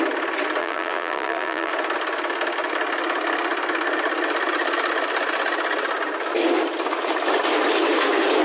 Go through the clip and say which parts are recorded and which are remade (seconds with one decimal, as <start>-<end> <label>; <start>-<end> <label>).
0.0-0.6 recorded; 0.6-1.7 remade; 1.7-8.4 recorded